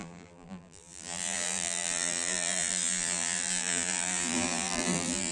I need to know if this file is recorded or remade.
remade